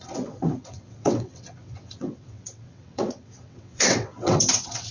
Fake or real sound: fake